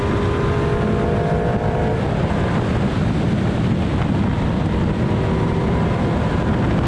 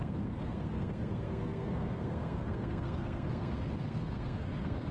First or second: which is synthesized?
second